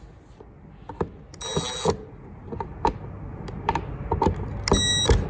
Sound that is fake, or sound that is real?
real